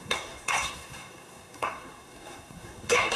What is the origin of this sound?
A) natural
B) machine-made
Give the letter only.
B